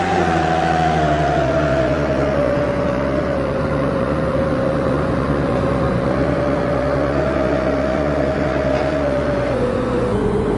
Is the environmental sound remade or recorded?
remade